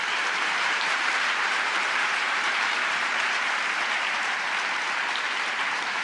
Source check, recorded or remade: remade